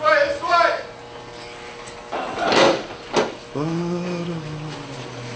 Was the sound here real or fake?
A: real